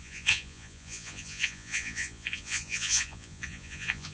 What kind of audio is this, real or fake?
fake